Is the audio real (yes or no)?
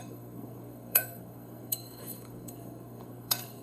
no